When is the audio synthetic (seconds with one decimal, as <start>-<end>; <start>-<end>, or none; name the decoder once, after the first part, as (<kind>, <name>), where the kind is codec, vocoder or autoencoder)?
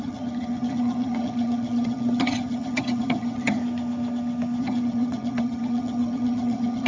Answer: 0.0-3.6 (vocoder, HiFi-GAN); 4.6-6.9